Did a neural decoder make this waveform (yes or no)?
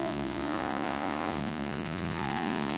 yes